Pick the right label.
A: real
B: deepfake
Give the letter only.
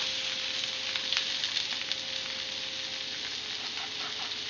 A